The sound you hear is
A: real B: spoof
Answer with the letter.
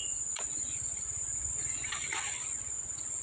B